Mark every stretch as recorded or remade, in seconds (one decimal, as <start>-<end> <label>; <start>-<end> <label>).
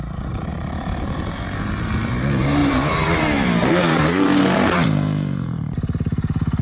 0.0-6.6 remade